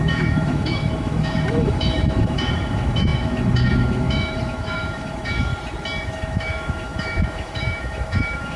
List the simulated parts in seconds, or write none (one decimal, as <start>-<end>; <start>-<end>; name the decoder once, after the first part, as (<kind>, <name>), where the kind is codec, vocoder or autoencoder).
0.0-5.5 (autoencoder, DAC-VAE); 6.0-8.6